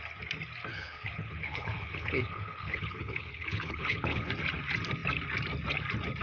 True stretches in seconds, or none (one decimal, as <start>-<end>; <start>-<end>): 0.0-0.7; 4.3-6.2